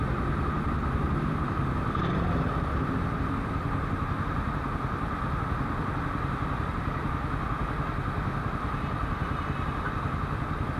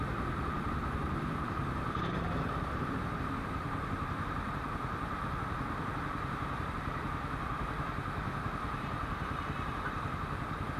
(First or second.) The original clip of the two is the first